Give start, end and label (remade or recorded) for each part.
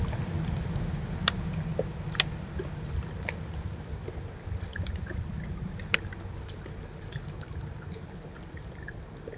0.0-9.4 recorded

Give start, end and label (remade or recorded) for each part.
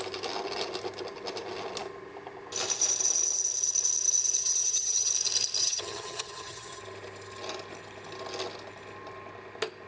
0.0-4.4 recorded; 4.4-5.1 remade; 5.1-5.6 recorded; 5.6-6.8 remade; 6.8-9.9 recorded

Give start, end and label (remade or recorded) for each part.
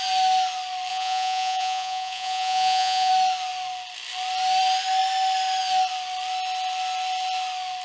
0.0-0.9 recorded; 0.9-3.1 remade; 3.1-7.8 recorded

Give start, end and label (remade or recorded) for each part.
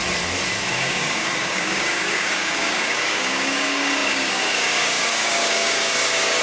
0.0-0.7 recorded; 0.7-6.4 remade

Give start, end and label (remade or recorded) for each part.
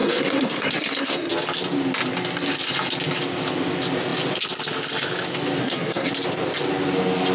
0.0-1.3 remade; 1.3-5.6 recorded; 5.6-6.1 remade; 6.1-7.3 recorded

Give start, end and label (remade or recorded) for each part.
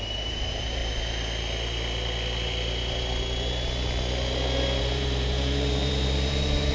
0.0-0.8 remade; 0.8-4.8 recorded; 4.8-6.7 remade